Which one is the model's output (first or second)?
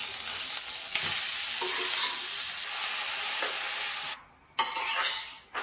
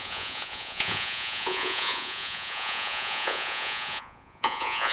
second